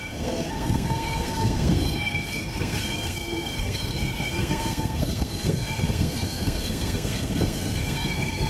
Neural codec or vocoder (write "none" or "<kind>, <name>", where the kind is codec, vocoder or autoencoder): codec, SNAC